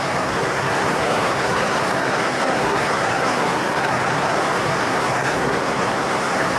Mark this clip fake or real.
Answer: fake